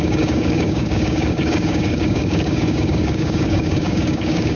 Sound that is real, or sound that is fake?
fake